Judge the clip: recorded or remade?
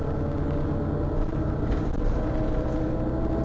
recorded